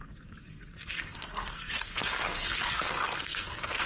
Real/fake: fake